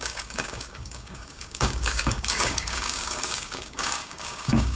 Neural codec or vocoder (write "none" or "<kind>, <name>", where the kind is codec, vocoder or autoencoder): codec, DAC